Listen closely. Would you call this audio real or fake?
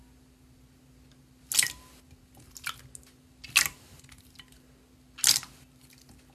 real